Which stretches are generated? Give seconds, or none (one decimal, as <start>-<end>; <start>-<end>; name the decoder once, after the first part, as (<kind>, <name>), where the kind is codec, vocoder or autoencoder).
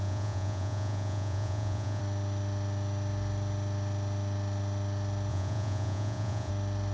0.0-2.0 (vocoder, Vocos); 5.3-6.5